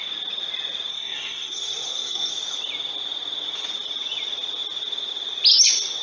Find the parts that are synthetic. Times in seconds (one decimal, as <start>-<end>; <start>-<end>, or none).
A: 0.9-2.3